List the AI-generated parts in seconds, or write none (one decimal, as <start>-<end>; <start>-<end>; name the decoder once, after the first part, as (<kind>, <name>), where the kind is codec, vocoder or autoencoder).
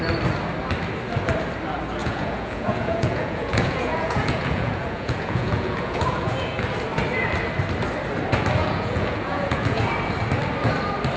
2.0-6.6 (vocoder, Vocos); 8.6-9.8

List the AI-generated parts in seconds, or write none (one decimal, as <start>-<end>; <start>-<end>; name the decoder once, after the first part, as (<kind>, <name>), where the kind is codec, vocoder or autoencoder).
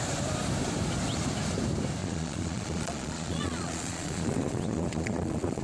2.0-5.6 (vocoder, Vocos)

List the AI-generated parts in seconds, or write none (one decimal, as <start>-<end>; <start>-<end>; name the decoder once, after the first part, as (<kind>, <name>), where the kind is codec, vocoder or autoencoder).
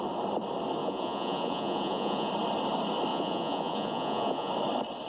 0.8-2.3 (vocoder, Vocos); 3.1-4.5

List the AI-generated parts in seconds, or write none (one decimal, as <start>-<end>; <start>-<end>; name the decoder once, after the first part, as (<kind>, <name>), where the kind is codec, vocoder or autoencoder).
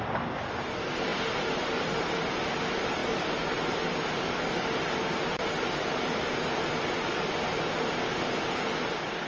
none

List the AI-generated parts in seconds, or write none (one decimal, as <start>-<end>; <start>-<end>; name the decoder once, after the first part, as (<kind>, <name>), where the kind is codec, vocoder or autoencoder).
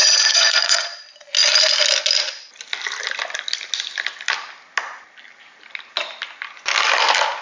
0.0-0.8 (vocoder, Vocos)